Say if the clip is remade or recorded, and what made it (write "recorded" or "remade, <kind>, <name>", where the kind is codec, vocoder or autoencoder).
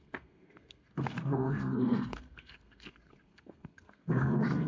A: remade, codec, SNAC